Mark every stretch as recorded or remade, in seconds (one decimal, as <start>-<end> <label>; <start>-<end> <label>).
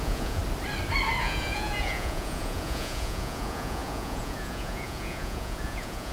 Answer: 0.0-0.4 remade; 0.4-1.2 recorded; 1.2-6.1 remade